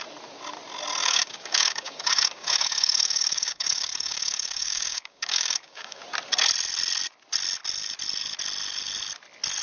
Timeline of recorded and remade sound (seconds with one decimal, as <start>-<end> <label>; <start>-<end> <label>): 0.0-1.0 recorded; 1.0-6.0 remade; 6.0-9.6 recorded